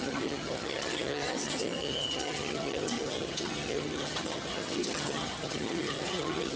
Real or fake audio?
fake